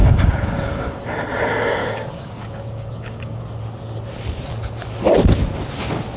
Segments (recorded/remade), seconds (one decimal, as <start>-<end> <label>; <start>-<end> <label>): 0.0-1.0 remade; 1.0-1.8 recorded; 1.8-3.4 remade; 3.4-6.2 recorded